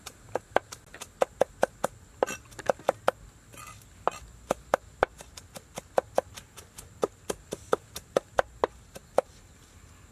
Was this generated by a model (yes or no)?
no